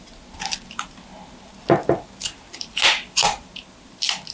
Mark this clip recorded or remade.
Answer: recorded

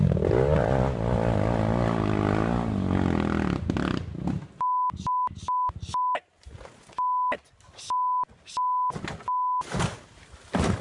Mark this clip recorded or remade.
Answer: recorded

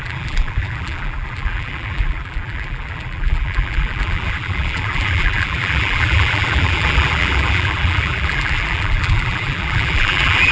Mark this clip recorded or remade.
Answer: remade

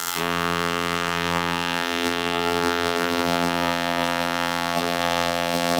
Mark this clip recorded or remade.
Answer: remade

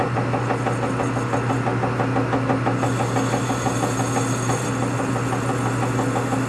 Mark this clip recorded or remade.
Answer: recorded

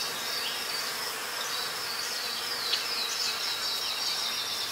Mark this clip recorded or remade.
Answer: recorded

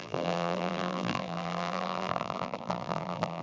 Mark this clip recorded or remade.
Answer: remade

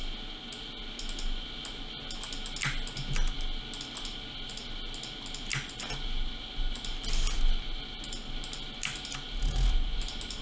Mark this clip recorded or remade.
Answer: recorded